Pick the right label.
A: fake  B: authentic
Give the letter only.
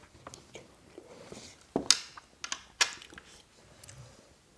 B